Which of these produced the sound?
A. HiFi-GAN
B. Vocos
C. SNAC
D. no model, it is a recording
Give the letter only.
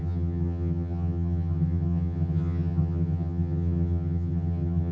A